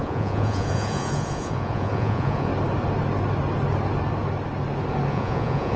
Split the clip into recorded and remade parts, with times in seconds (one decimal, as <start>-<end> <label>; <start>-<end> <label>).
0.0-2.5 remade; 2.5-5.1 recorded; 5.1-5.8 remade